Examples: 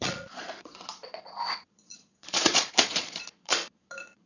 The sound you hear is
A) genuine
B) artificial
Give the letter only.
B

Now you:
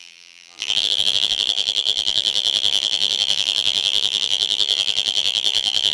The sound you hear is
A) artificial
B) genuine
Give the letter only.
A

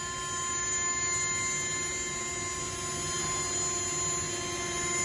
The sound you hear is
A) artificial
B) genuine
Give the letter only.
B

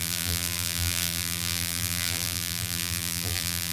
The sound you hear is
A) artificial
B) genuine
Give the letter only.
A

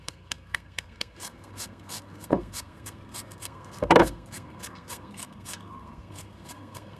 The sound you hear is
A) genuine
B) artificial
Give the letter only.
B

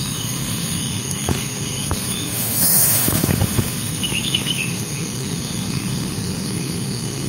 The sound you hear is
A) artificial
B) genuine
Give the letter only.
A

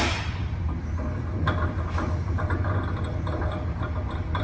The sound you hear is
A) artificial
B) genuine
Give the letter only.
B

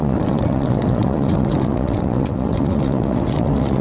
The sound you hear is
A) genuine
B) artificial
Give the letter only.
B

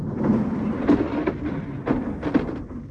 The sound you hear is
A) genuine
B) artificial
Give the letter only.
A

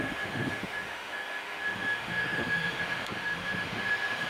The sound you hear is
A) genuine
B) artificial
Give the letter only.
B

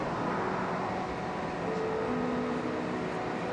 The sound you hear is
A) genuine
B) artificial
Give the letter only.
A